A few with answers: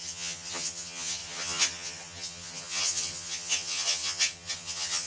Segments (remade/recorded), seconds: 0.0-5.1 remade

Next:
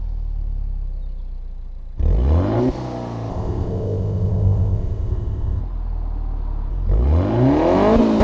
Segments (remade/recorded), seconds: 0.0-3.3 recorded; 3.3-5.6 remade; 5.6-8.2 recorded

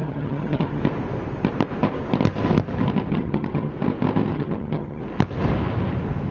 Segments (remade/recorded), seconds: 0.0-0.8 remade; 0.8-3.1 recorded; 3.1-3.7 remade; 3.7-4.3 recorded; 4.3-5.0 remade; 5.0-6.3 recorded

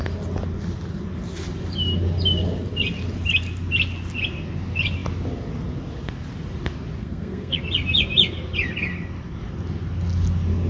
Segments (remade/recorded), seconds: 0.0-7.0 recorded; 7.0-7.6 remade; 7.6-10.7 recorded

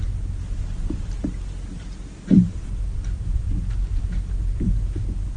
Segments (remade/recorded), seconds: 0.0-1.7 recorded; 1.7-3.6 remade; 3.6-5.4 recorded

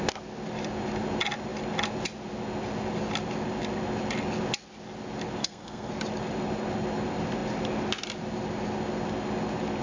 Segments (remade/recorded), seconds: 0.0-5.4 recorded; 5.4-5.9 remade; 5.9-9.8 recorded